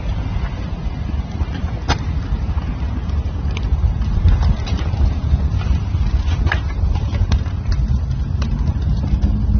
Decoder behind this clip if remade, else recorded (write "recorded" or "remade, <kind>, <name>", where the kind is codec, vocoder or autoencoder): remade, vocoder, BigVGAN v2